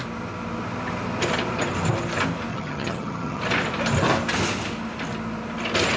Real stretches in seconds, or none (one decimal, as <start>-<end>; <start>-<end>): 0.0-2.5; 3.4-6.0